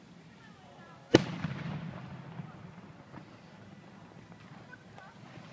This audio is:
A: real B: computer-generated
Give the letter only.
A